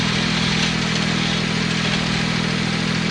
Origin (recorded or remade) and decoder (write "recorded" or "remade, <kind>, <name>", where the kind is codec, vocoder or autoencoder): recorded